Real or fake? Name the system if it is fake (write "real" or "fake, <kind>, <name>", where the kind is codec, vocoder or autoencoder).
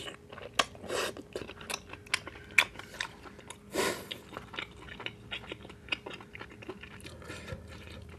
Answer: real